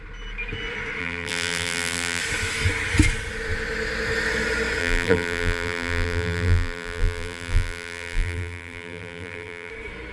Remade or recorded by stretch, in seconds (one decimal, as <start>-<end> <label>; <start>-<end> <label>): 0.0-1.0 recorded; 1.0-2.2 remade; 2.2-4.8 recorded; 4.8-9.7 remade; 9.7-10.1 recorded